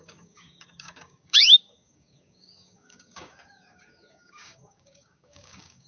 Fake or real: fake